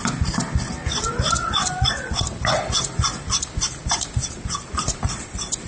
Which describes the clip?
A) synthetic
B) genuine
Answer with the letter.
A